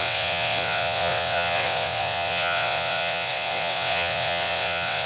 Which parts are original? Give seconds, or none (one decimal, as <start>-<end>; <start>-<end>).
none